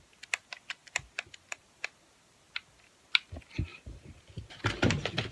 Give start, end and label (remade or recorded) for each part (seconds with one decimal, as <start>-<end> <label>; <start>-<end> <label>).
0.0-0.8 recorded; 0.8-1.7 remade; 1.7-3.7 recorded; 3.7-4.5 remade; 4.5-5.3 recorded